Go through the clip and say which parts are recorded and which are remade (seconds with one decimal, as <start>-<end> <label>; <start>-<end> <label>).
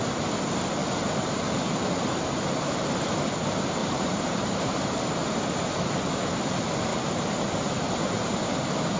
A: 0.0-0.8 recorded; 0.8-1.5 remade; 1.5-3.8 recorded; 3.8-5.0 remade; 5.0-6.9 recorded; 6.9-7.4 remade; 7.4-9.0 recorded